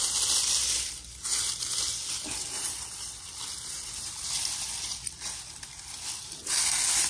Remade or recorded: recorded